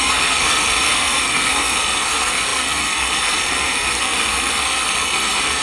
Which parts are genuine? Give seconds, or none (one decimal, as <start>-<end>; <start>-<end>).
none